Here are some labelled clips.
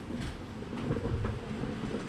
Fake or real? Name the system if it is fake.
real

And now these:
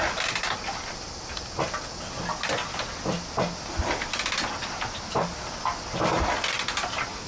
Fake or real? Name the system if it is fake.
real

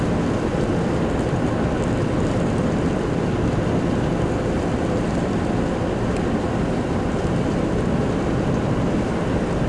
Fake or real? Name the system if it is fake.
real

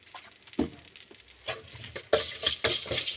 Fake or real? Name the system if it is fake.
real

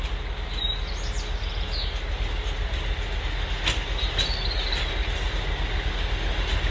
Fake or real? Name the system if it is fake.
real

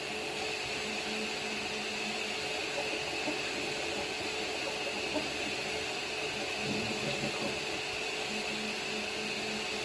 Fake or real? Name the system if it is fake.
real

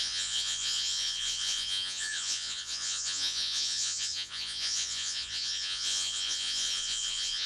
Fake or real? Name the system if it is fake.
fake, vocoder, Vocos